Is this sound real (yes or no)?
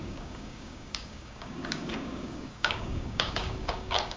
no